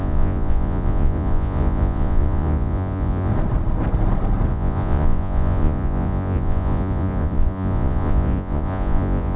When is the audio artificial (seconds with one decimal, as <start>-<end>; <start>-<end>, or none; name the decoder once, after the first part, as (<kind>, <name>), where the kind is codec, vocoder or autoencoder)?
0.0-3.3 (vocoder, Vocos); 4.5-9.4